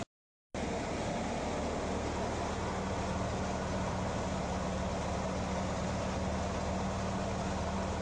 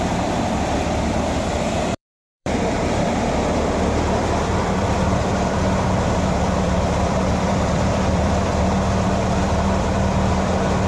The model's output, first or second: second